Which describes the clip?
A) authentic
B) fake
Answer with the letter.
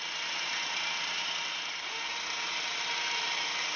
A